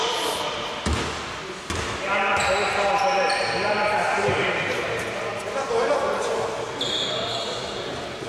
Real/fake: real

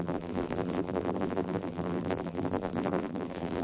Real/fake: fake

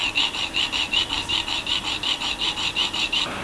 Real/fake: real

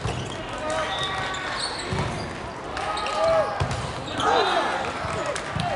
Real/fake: real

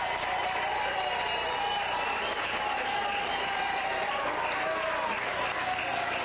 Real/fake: real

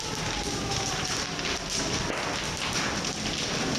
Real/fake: real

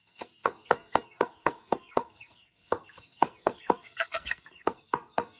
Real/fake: fake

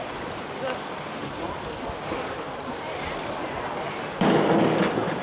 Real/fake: real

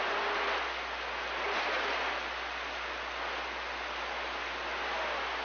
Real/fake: real